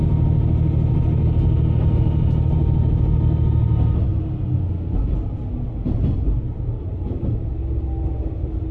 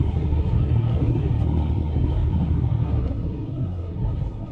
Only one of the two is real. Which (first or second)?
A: first